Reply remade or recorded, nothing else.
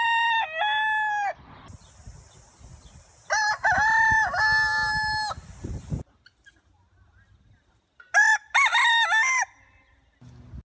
recorded